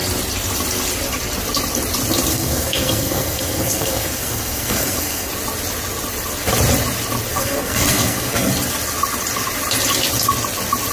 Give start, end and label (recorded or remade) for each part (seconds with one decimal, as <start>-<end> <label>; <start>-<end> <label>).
0.0-2.3 recorded; 2.3-5.3 remade; 5.3-7.3 recorded; 7.3-8.5 remade; 8.5-10.9 recorded